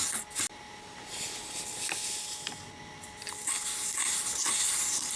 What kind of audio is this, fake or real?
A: real